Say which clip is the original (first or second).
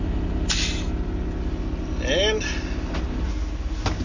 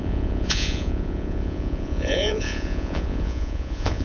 first